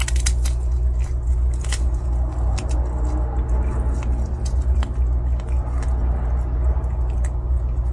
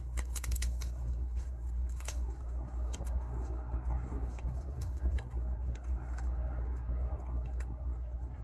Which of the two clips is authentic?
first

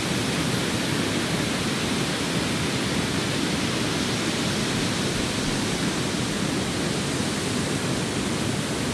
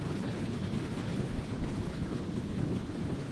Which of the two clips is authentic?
first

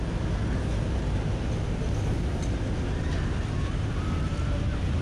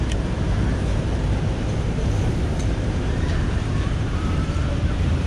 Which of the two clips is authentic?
first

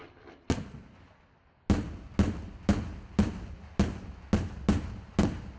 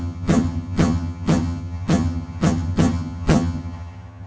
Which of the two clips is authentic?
first